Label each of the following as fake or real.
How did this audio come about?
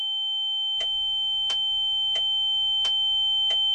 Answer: real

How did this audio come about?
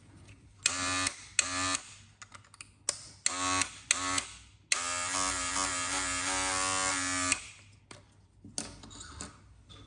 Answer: real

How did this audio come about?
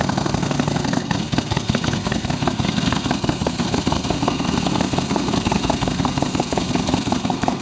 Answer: fake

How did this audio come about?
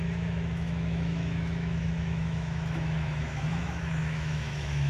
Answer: fake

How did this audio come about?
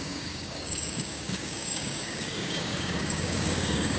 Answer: fake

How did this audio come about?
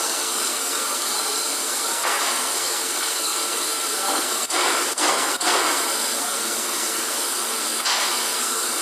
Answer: fake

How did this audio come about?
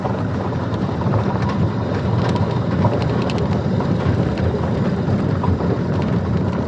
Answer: fake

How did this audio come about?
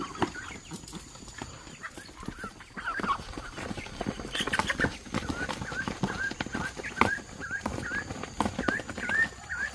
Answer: real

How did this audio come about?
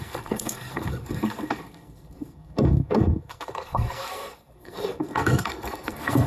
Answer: fake